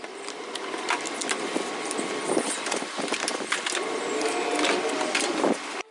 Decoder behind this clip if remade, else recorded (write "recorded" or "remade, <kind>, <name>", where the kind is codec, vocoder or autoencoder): recorded